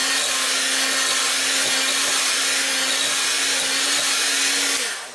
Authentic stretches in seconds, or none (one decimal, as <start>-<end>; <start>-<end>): 0.0-5.1